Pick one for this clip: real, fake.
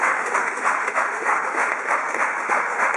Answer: fake